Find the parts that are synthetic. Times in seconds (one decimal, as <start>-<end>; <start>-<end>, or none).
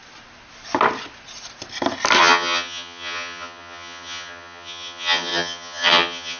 2.2-6.4